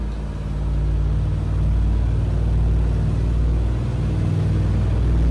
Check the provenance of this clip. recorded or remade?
recorded